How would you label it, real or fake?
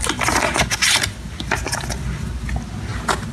real